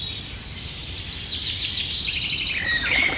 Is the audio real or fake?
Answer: fake